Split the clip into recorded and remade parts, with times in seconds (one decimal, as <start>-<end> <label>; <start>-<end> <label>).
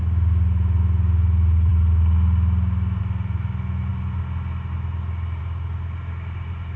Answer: 0.0-6.8 recorded